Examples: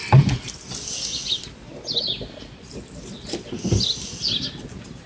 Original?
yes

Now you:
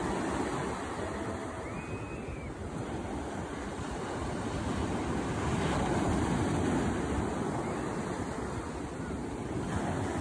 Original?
yes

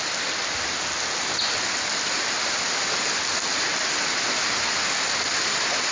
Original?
yes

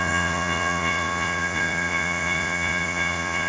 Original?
no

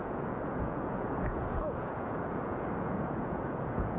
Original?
no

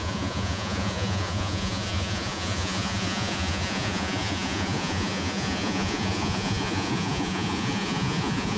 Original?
no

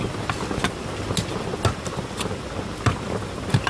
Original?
yes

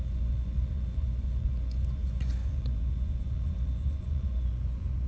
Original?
no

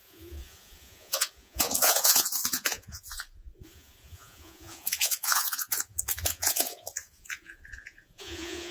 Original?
no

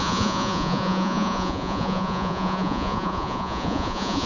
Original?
no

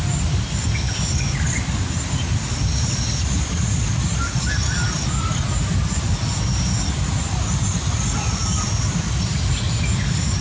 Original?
yes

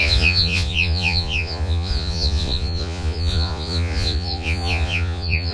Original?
no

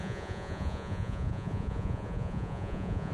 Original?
no